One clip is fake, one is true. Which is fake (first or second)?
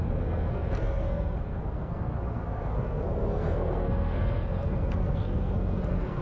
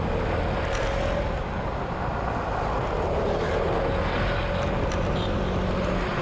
first